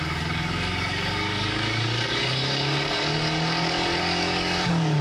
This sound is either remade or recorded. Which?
remade